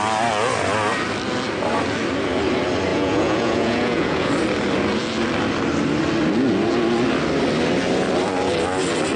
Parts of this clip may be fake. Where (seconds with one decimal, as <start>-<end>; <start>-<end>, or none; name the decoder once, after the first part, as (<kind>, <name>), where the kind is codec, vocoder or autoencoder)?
2.9-4.3 (vocoder, Vocos)